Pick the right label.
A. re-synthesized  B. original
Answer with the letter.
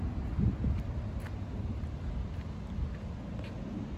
B